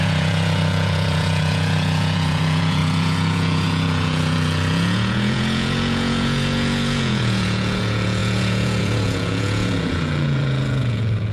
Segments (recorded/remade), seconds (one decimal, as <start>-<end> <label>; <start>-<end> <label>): 0.0-11.3 remade